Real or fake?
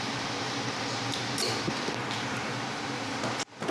real